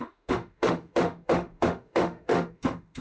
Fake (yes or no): yes